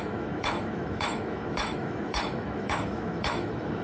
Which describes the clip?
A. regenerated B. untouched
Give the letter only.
A